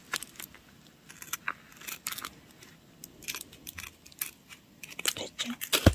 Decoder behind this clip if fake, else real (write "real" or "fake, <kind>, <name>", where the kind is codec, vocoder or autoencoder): real